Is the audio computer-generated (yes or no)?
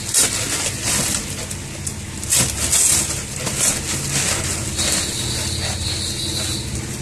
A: no